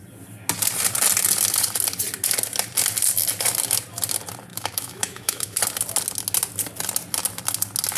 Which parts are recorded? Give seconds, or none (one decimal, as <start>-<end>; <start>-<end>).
0.0-4.5; 5.6-8.0